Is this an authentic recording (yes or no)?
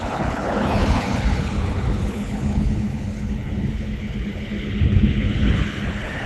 no